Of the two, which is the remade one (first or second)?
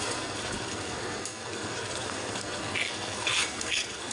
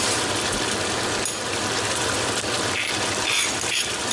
first